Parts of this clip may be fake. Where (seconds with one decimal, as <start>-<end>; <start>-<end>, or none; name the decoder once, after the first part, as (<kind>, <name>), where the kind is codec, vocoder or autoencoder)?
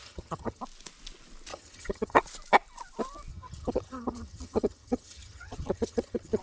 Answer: 0.0-0.6 (vocoder, HiFi-GAN); 1.5-2.2; 3.3-6.4